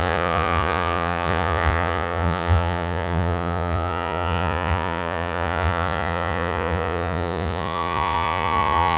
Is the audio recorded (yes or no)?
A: no